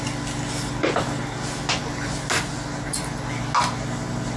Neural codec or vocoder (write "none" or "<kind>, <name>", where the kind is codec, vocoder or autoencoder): none